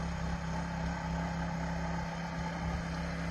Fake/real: real